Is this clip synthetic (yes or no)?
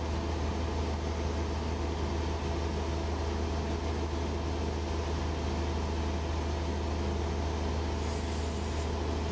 no